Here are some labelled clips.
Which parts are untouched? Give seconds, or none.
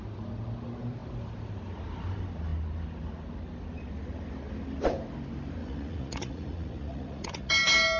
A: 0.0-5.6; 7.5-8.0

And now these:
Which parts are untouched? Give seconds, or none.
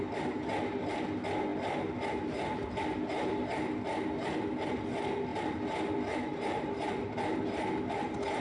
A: 0.0-8.4